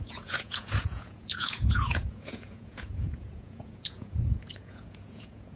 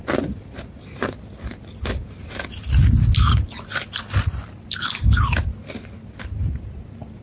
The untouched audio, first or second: second